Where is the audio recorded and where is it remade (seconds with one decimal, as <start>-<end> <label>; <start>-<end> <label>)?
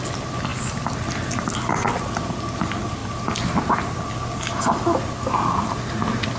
0.0-6.4 recorded